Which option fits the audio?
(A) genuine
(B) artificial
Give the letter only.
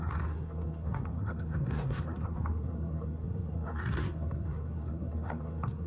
B